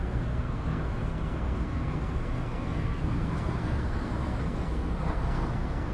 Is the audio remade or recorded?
remade